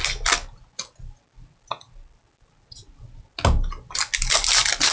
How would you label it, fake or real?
real